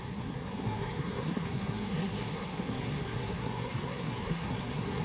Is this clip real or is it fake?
fake